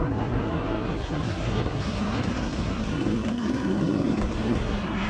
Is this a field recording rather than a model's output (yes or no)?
no